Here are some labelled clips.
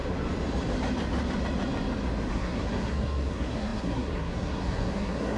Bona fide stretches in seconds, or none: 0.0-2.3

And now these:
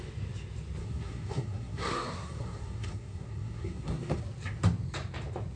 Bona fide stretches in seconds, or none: 0.0-0.8; 4.2-5.6

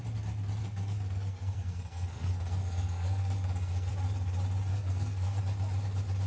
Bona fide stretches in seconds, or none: 0.0-0.6; 3.9-4.7; 5.4-6.3

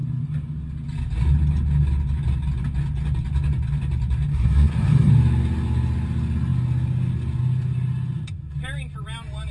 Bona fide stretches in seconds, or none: 0.0-4.3; 5.1-9.5